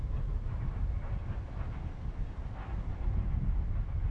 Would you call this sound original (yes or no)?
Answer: yes